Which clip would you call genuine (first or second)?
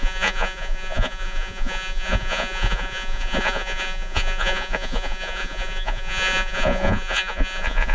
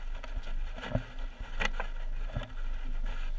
second